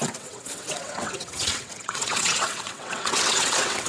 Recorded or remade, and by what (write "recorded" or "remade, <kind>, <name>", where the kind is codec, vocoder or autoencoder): remade, vocoder, WaveNeXt